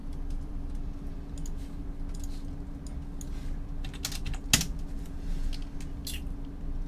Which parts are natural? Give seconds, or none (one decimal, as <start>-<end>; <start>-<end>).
0.7-6.9